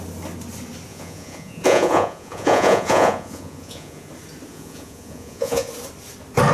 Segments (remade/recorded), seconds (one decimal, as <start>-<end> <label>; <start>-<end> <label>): 0.0-0.9 recorded; 0.9-4.1 remade; 4.1-4.5 recorded; 4.5-5.7 remade; 5.7-6.5 recorded